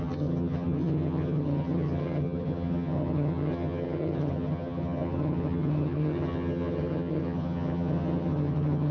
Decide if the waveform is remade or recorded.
remade